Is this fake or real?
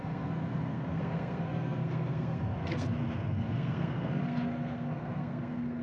fake